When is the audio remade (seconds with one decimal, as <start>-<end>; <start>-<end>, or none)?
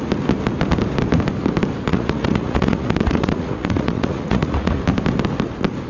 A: 1.9-4.8